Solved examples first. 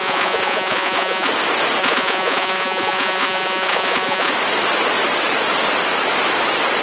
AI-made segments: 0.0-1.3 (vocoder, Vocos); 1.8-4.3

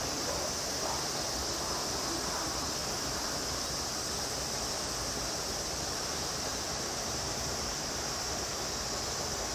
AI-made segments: 2.8-3.3 (vocoder, BigVGAN v2); 6.5-8.5

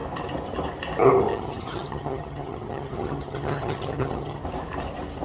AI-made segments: 1.3-4.4 (vocoder, HiFi-GAN)

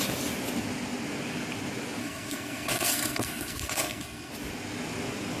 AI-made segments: 2.0-4.3 (codec, SNAC)

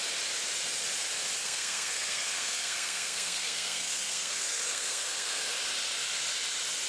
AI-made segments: 1.4-5.5 (codec, SNAC)

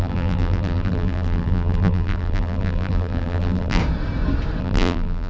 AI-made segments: 0.0-3.8 (vocoder, BigVGAN v2); 4.6-5.3

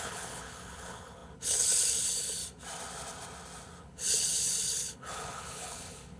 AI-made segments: 0.0-2.4 (codec, HILCodec); 3.8-6.2